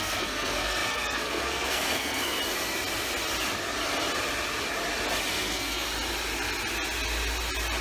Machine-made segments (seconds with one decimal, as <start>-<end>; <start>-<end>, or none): 0.0-2.4; 5.3-5.9